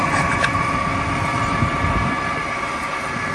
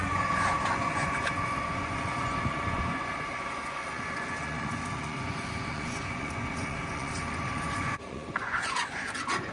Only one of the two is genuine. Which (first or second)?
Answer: first